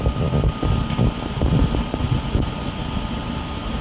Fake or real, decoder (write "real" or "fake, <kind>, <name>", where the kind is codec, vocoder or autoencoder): real